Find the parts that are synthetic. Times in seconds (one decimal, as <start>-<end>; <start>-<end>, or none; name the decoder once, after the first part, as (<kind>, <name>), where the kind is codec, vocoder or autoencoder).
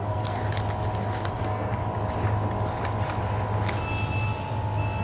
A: 0.0-0.4 (codec, SNAC); 1.3-1.8